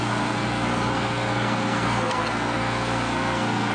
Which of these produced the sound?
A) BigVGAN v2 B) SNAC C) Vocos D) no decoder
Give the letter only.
B